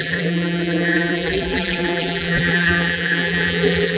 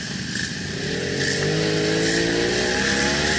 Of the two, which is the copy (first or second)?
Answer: first